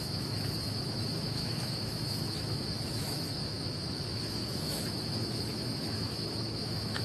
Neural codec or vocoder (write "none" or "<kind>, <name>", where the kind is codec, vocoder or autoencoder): autoencoder, DAC-VAE